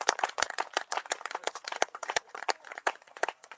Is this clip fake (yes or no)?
yes